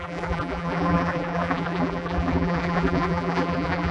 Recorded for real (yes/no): no